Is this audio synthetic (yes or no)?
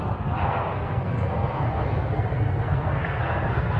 yes